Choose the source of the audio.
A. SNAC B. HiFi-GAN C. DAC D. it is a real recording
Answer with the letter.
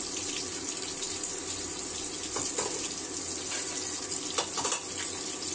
D